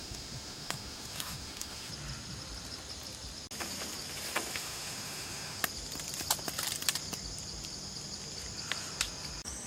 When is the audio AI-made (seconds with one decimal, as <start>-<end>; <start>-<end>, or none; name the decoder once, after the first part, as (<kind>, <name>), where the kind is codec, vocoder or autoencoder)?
0.0-1.9 (autoencoder, DAC-VAE); 4.5-5.6